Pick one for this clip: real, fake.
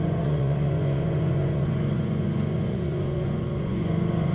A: fake